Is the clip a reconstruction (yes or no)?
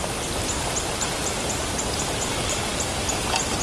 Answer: no